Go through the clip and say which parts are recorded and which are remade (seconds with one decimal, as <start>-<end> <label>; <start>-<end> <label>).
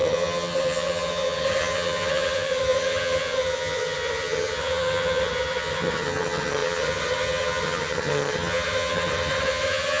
0.0-10.0 remade